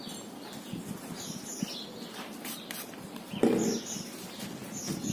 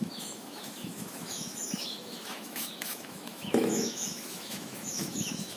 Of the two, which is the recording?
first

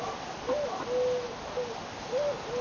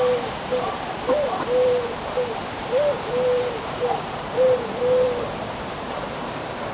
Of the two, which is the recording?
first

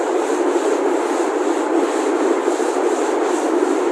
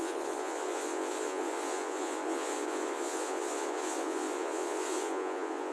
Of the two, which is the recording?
first